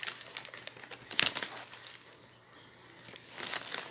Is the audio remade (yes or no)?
no